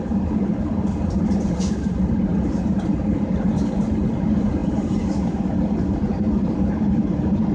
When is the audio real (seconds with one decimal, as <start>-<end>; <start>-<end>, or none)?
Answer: 0.0-7.5